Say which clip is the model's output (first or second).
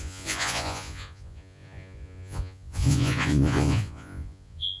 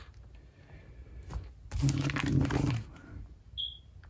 first